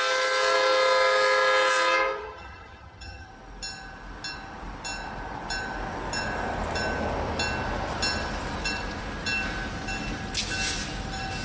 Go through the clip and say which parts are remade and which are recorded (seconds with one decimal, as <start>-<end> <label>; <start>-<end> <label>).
0.0-2.2 recorded; 2.2-3.3 remade; 3.3-11.4 recorded